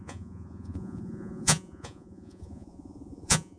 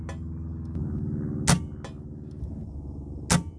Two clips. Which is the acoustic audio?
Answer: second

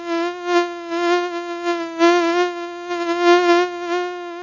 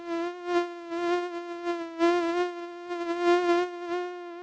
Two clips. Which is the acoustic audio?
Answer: second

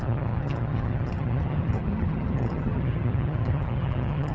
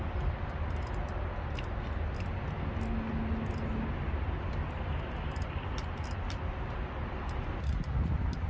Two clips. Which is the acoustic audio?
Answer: second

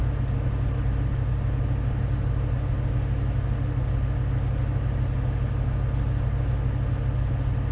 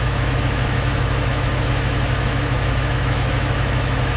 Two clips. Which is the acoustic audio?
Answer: first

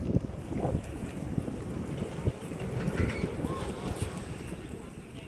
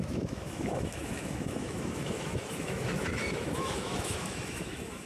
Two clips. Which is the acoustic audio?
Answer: first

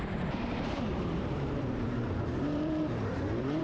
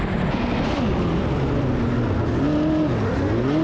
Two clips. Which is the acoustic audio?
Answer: second